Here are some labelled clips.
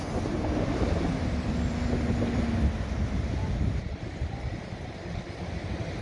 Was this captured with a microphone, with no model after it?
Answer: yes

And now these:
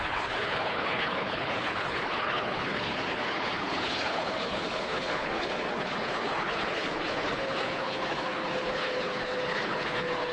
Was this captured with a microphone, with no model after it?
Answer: no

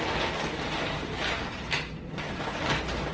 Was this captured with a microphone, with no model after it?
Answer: yes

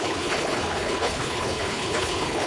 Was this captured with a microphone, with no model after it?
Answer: no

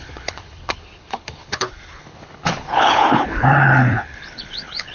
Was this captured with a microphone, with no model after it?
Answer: no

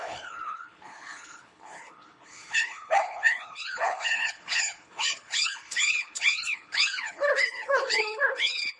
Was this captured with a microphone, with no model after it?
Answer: no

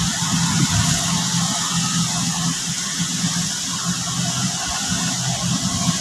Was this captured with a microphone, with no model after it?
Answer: yes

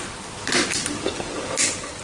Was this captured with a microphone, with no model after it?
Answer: yes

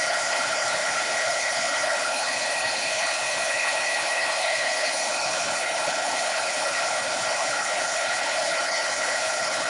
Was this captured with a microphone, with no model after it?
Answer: no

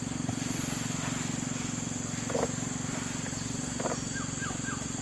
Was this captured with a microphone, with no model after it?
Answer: yes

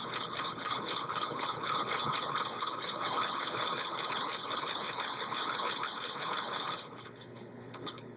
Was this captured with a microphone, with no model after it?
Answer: no